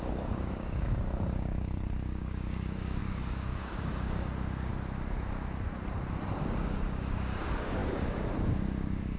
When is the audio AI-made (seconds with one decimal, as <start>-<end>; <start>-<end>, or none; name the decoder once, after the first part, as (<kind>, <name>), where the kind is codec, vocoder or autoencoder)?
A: 0.0-4.7 (codec, DAC); 6.4-9.2